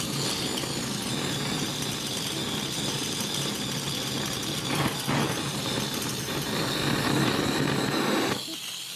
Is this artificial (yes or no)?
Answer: no